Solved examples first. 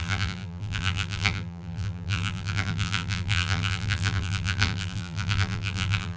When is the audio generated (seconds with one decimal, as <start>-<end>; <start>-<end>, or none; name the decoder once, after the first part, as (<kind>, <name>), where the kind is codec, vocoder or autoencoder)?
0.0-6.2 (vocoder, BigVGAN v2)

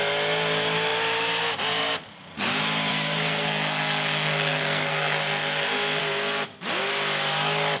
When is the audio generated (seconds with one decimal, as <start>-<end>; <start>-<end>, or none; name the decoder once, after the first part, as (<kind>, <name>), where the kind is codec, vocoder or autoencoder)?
2.9-6.0 (codec, SNAC)

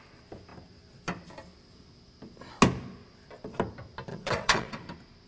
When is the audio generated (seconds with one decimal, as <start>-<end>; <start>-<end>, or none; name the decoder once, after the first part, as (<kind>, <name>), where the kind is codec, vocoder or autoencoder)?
4.1-4.8 (vocoder, WaveNeXt)

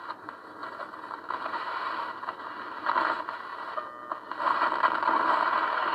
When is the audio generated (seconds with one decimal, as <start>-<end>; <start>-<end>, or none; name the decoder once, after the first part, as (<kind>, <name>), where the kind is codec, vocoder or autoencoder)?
0.0-3.5 (vocoder, BigVGAN v2); 5.0-5.9

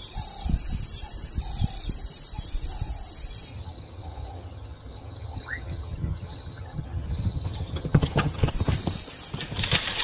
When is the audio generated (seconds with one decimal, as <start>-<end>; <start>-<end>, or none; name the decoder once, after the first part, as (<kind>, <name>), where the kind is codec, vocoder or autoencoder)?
3.5-8.5 (vocoder, HiFi-GAN)